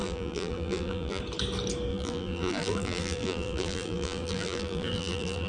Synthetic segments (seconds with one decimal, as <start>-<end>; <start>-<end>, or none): 0.0-1.2; 1.9-5.5